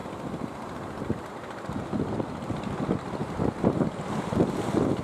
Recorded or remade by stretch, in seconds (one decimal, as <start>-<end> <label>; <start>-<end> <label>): 0.0-5.0 recorded